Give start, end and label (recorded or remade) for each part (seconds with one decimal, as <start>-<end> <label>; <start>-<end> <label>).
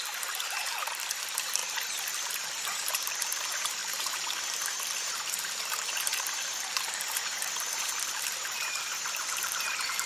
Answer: 0.0-10.1 remade